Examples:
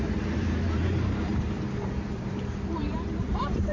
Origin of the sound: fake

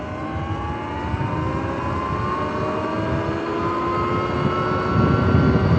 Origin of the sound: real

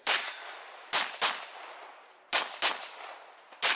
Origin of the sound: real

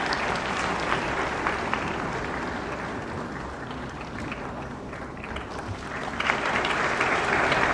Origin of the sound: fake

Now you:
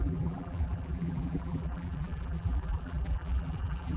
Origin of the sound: fake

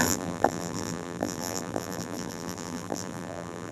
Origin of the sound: fake